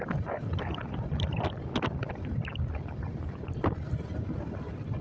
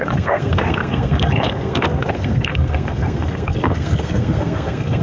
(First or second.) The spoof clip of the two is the second